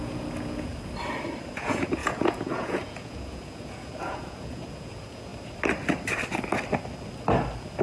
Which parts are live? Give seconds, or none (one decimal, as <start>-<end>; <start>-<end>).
0.7-1.5; 5.3-7.8